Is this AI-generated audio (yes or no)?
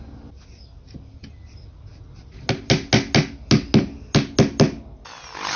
no